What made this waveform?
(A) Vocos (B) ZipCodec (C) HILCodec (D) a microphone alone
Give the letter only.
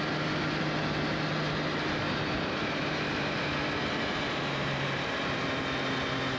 D